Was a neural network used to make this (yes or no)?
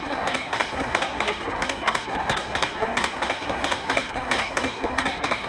yes